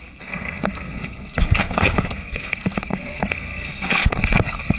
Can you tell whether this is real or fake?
fake